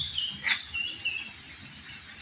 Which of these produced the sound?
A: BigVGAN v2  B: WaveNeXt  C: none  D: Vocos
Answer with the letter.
C